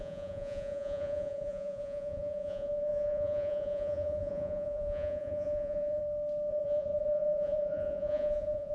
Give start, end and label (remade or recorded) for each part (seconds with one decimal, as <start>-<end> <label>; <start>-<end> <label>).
0.0-6.0 remade; 6.0-6.5 recorded; 6.5-8.7 remade